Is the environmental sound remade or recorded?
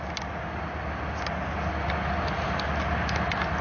recorded